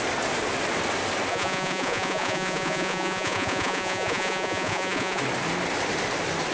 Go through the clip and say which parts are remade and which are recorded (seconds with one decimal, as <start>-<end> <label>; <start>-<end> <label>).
0.0-1.3 recorded; 1.3-5.2 remade; 5.2-6.5 recorded